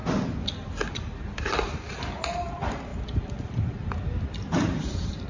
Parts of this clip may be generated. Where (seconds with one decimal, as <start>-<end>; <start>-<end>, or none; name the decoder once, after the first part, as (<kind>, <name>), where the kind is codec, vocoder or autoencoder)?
none